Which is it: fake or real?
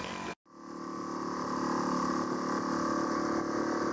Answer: real